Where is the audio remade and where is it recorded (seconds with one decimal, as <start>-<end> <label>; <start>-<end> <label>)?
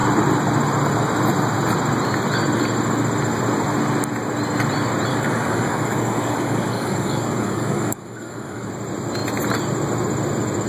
0.0-5.1 recorded; 5.1-8.7 remade; 8.7-10.7 recorded